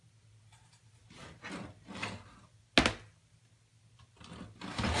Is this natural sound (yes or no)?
yes